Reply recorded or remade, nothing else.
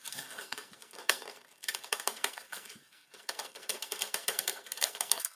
remade